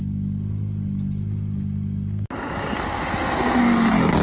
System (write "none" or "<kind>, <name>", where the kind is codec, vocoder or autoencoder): none